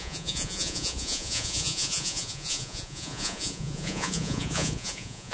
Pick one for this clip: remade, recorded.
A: remade